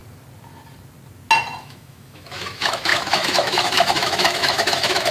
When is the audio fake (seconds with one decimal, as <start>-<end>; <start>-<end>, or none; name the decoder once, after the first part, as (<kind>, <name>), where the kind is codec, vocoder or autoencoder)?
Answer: 1.6-5.1 (autoencoder, DAC-VAE)